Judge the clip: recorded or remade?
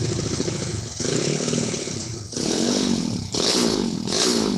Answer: remade